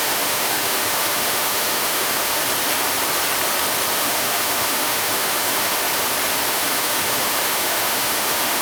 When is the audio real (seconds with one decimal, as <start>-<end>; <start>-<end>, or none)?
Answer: 2.4-3.9; 5.8-6.5